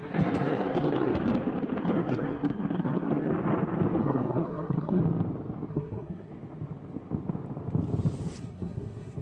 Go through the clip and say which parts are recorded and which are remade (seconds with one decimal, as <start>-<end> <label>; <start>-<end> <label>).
0.0-1.1 remade; 1.1-1.8 recorded; 1.8-3.3 remade; 3.3-4.0 recorded; 4.0-5.0 remade; 5.0-5.7 recorded; 5.7-6.3 remade; 6.3-8.4 recorded; 8.4-9.2 remade